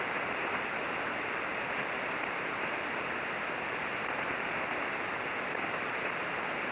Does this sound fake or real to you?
real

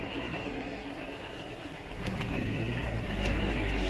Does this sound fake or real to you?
fake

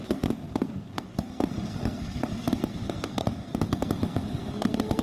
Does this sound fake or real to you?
fake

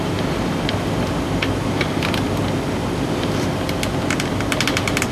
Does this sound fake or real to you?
real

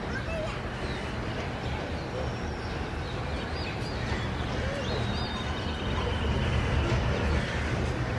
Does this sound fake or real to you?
real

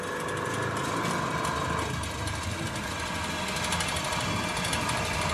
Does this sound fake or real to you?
real